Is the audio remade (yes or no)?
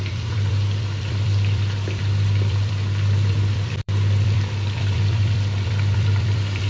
yes